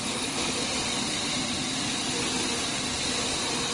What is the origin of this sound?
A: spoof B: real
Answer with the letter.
B